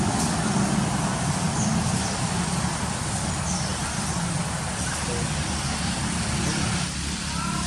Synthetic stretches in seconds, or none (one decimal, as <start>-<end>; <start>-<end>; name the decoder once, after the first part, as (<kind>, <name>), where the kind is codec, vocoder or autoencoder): none